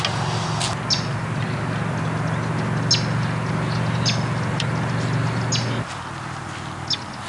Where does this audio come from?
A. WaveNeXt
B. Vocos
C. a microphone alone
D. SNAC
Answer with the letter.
C